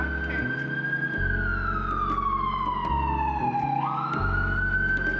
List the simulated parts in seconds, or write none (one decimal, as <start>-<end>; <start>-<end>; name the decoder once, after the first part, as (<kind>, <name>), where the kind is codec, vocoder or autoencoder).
none